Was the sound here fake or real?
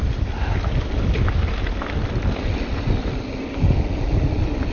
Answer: real